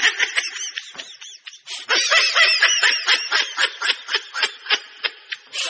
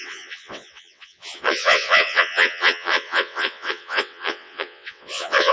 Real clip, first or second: first